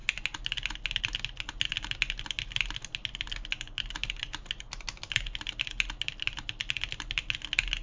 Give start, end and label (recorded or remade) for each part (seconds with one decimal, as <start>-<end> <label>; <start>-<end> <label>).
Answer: 0.0-7.8 recorded